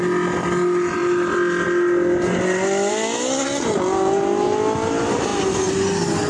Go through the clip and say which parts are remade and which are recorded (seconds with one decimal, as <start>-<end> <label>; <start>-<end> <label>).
0.0-6.3 recorded